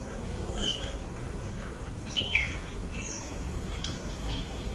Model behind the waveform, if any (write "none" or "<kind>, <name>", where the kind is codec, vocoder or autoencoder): codec, SNAC